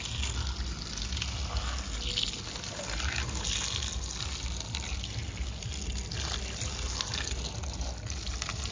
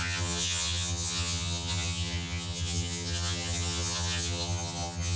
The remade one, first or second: second